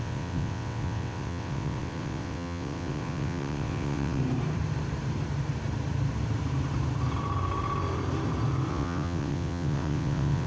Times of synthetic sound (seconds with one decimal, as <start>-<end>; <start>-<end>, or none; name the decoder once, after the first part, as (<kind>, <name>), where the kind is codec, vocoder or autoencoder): 0.0-4.2 (vocoder, WaveNeXt); 8.7-10.5